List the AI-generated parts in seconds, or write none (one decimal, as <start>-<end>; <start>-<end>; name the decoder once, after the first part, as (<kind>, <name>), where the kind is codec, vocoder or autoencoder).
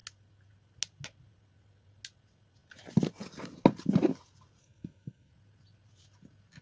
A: 4.6-5.3 (codec, SNAC)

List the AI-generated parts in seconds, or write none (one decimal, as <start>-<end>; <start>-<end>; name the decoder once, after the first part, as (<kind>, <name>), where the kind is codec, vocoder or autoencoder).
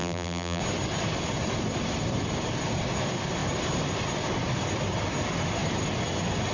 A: 0.0-0.6 (vocoder, BigVGAN v2)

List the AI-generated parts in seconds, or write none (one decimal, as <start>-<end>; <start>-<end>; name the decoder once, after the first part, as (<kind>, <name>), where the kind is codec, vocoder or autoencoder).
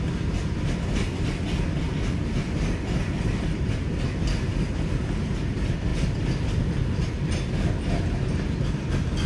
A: none